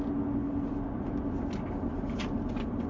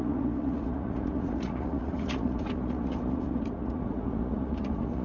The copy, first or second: second